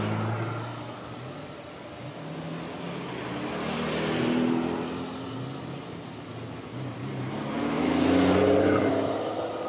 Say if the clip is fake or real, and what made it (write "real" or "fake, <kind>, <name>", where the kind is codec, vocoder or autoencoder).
real